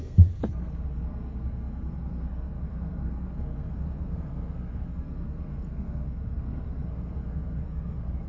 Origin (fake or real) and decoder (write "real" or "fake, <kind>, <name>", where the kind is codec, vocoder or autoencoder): fake, codec, SNAC